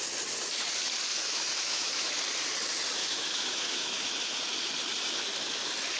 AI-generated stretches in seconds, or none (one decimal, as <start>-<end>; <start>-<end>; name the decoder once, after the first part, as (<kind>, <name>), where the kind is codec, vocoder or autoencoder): 1.1-2.2 (autoencoder, DAC-VAE); 3.0-4.4